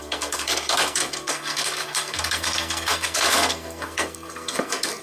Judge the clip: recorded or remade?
remade